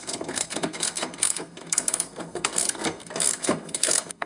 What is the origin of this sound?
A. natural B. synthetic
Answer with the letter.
B